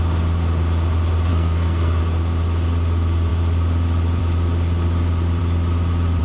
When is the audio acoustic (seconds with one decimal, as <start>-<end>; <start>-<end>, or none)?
0.0-1.3; 2.0-6.2